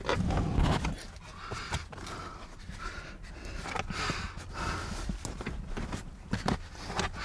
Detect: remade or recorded recorded